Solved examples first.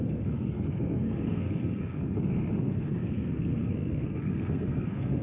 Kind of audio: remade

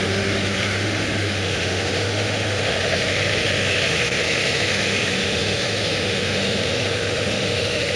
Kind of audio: remade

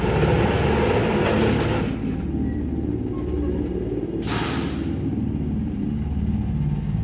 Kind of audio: recorded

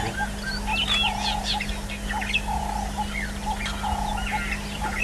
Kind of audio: recorded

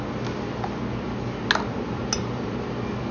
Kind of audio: recorded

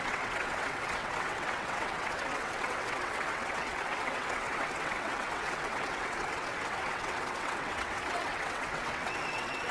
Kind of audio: remade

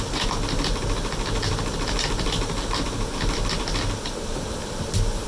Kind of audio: remade